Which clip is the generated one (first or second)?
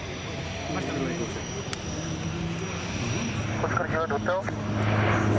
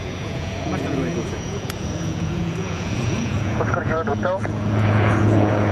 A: second